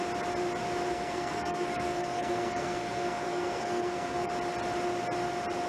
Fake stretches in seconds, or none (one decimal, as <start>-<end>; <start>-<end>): 0.9-4.3